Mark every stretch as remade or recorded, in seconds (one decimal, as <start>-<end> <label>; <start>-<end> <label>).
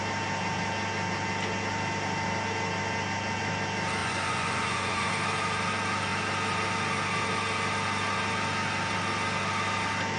0.0-4.0 recorded; 4.0-5.1 remade; 5.1-10.2 recorded